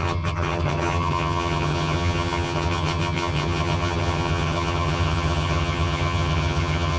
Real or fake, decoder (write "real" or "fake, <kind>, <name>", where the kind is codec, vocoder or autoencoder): fake, vocoder, HiFi-GAN